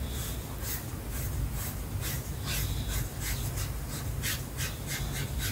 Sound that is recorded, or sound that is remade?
recorded